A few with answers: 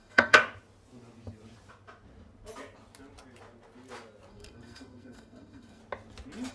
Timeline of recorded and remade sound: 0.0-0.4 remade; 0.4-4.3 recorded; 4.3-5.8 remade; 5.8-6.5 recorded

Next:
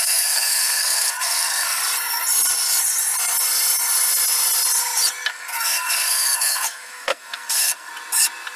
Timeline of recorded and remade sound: 0.0-1.8 remade; 1.8-5.3 recorded; 5.3-7.9 remade; 7.9-8.6 recorded

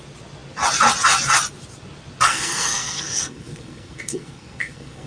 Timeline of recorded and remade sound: 0.0-2.3 recorded; 2.3-5.1 remade

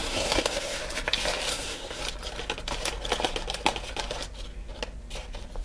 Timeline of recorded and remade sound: 0.0-0.8 remade; 0.8-1.5 recorded; 1.5-2.0 remade; 2.0-5.6 recorded

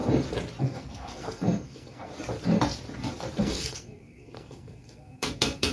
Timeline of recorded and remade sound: 0.0-0.6 recorded; 0.6-2.1 remade; 2.1-3.4 recorded; 3.4-5.7 remade

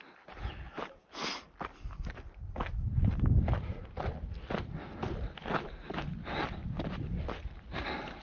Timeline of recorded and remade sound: 0.0-8.2 recorded

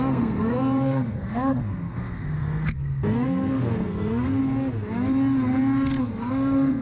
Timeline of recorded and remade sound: 0.0-4.4 remade; 4.4-6.0 recorded; 6.0-6.8 remade